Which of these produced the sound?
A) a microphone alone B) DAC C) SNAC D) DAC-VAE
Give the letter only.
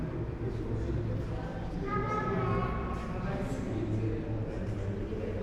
A